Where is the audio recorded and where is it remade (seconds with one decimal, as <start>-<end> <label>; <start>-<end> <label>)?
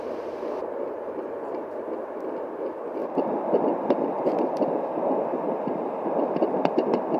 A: 0.0-0.6 recorded; 0.6-1.3 remade; 1.3-7.2 recorded